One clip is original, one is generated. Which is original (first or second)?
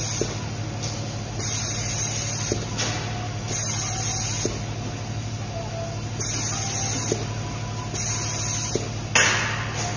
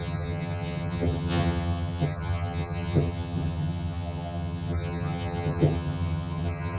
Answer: first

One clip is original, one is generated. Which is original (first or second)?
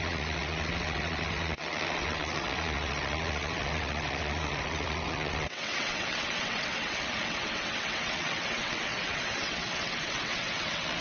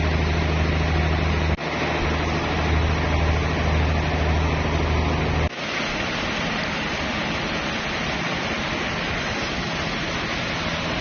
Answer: second